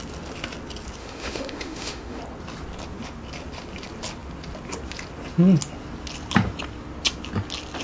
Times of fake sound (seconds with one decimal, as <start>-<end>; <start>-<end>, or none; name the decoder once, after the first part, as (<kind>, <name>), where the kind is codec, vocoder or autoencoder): 1.0-2.2 (autoencoder, DAC-VAE)